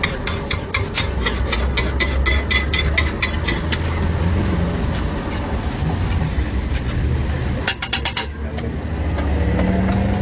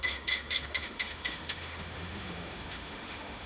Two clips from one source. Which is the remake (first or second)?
second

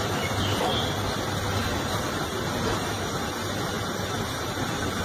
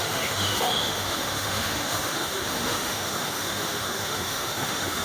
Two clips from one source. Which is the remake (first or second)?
second